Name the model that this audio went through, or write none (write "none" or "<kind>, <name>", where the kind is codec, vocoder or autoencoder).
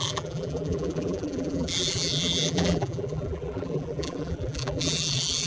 vocoder, BigVGAN v2